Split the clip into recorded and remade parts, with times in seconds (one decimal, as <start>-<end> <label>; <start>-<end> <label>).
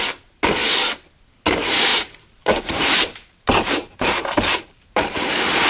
0.0-1.9 recorded; 1.9-5.3 remade; 5.3-5.7 recorded